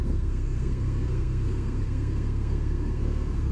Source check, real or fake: fake